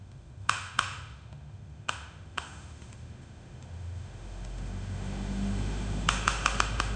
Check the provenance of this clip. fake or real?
fake